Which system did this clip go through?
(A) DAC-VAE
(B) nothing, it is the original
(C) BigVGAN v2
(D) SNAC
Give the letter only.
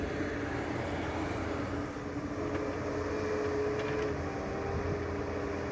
B